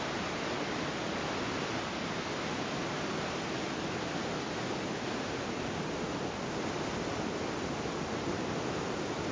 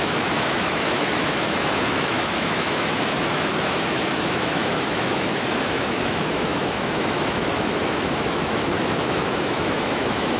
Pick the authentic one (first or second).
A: first